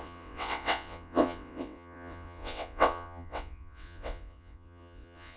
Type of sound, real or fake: fake